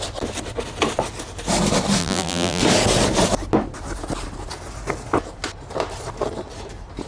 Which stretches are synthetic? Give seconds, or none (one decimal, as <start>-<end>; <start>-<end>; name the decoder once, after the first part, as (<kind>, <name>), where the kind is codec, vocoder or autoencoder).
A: 2.0-2.6 (vocoder, BigVGAN v2)